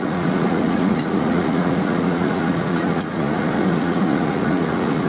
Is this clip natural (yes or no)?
no